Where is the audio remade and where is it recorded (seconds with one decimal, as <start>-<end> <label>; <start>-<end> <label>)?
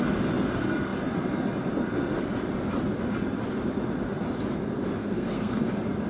0.0-5.0 recorded; 5.0-5.6 remade; 5.6-6.1 recorded